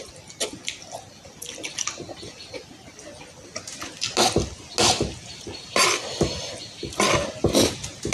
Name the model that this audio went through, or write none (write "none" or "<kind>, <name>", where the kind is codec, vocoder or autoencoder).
none